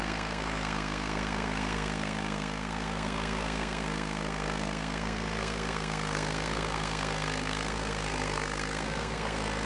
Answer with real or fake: fake